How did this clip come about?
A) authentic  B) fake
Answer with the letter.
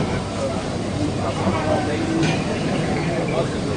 B